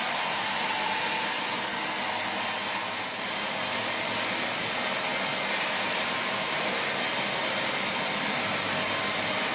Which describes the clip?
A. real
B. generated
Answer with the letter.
A